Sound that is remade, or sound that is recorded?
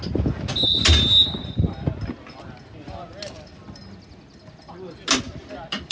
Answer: recorded